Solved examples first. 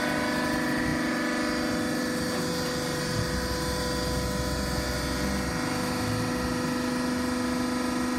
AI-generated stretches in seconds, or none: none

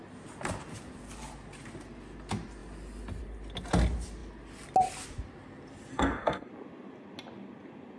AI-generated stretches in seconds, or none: 5.9-6.5

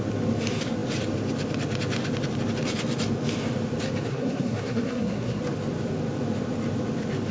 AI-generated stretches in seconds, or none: 4.1-5.4

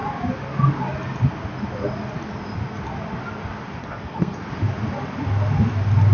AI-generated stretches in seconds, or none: 3.8-4.5